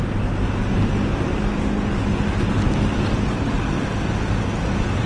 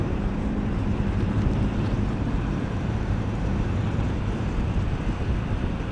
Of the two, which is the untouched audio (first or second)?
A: first